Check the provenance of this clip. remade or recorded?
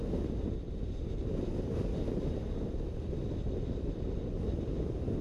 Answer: recorded